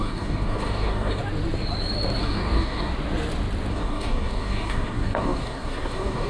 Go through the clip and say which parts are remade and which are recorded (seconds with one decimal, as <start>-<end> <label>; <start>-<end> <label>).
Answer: 0.0-1.2 remade; 1.2-2.2 recorded; 2.2-2.9 remade; 2.9-3.7 recorded; 3.7-6.3 remade